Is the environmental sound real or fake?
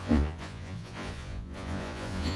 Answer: fake